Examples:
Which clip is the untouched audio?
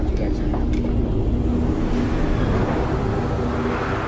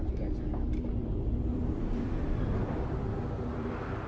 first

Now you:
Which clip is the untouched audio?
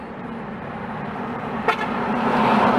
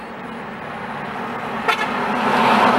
second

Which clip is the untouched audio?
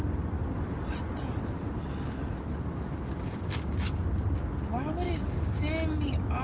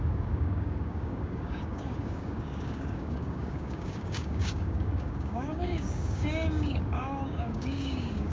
first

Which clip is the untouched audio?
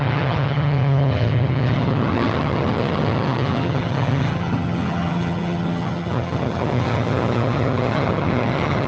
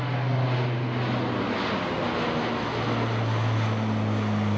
second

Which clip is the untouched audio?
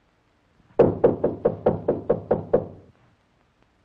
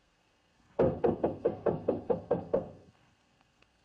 first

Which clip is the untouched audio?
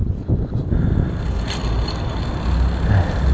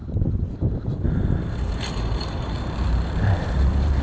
first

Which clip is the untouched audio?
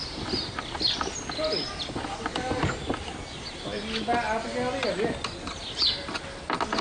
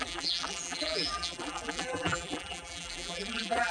first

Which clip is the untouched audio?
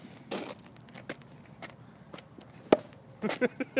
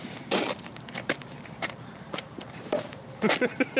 first